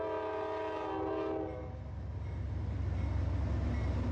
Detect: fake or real real